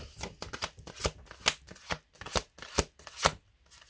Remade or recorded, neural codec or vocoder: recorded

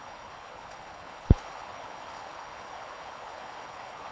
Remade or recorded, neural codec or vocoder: remade, codec, HILCodec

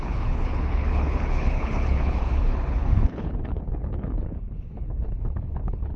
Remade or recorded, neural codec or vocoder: remade, codec, HILCodec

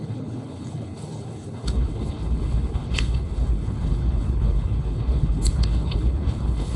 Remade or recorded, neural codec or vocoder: remade, codec, HILCodec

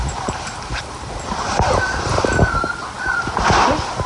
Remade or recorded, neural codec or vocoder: recorded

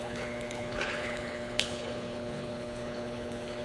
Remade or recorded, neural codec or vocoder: remade, codec, HILCodec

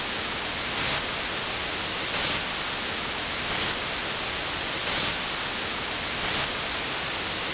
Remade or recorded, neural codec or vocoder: recorded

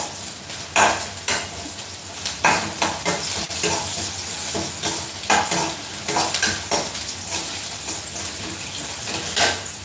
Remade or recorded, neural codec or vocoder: recorded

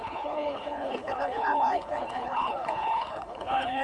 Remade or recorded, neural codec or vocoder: remade, codec, HILCodec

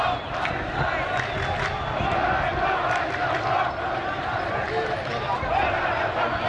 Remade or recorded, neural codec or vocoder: recorded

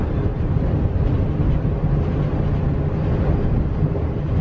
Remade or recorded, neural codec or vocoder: recorded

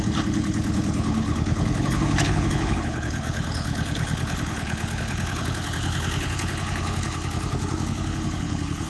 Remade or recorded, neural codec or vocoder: remade, codec, HILCodec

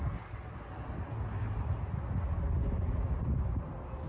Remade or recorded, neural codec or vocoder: recorded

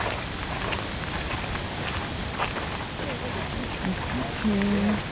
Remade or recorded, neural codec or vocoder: recorded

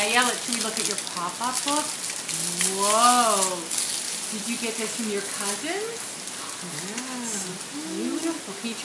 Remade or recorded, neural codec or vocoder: recorded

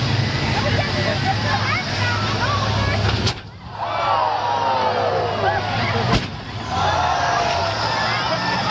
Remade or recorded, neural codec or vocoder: recorded